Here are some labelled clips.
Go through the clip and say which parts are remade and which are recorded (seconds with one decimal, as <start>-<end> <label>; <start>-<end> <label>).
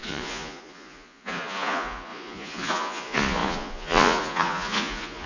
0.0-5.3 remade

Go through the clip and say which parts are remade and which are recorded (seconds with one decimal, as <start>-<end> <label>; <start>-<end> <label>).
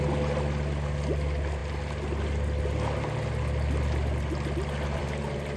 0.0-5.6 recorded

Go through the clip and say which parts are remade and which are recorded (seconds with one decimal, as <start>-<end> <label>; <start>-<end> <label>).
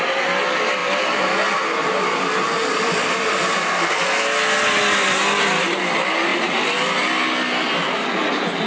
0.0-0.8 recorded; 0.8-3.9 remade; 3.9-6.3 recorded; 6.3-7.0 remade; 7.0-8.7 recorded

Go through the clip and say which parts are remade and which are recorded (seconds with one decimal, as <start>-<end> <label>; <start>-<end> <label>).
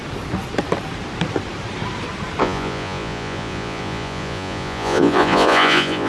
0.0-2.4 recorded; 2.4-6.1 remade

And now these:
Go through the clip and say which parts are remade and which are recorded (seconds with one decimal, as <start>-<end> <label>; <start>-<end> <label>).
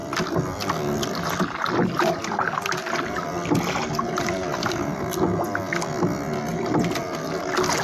0.0-7.8 recorded